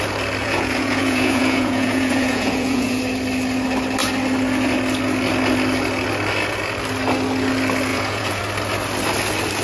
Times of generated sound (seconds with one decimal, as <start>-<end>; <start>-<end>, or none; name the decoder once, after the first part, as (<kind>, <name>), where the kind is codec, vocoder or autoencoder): 0.4-3.0 (vocoder, Vocos); 7.9-8.4